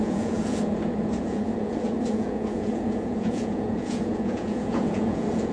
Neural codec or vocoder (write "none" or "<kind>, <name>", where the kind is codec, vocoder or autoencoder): vocoder, Vocos